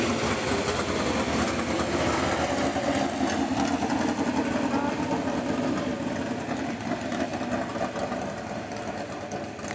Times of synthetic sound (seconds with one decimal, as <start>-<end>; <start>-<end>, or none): none

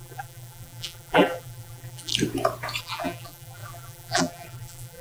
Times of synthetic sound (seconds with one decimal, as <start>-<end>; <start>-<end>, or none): 0.0-2.1; 2.8-5.0